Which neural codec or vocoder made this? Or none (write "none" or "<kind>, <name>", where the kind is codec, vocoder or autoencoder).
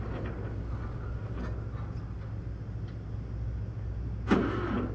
none